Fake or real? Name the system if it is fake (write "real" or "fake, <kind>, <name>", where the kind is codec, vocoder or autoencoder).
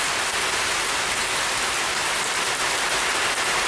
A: real